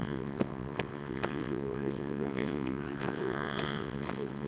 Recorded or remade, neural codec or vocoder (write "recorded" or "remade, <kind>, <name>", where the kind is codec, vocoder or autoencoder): remade, vocoder, WaveNeXt